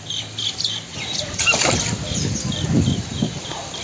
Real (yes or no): yes